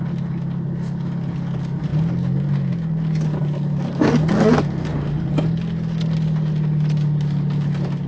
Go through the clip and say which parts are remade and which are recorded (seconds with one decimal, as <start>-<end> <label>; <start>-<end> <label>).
0.0-8.1 recorded

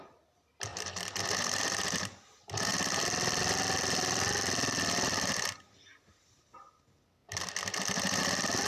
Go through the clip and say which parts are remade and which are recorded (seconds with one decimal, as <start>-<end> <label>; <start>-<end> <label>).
0.0-0.7 recorded; 0.7-1.6 remade; 1.6-8.7 recorded

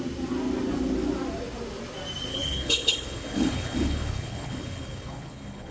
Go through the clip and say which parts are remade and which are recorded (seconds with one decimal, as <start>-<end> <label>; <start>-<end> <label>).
0.0-2.3 recorded; 2.3-5.7 remade

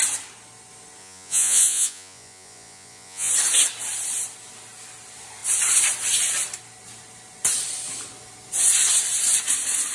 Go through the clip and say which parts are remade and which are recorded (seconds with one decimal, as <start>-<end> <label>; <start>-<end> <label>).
0.0-1.0 recorded; 1.0-3.3 remade; 3.3-9.9 recorded

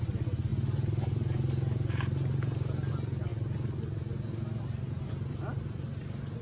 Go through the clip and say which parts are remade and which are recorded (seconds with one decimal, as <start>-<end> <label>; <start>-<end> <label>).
0.0-6.4 recorded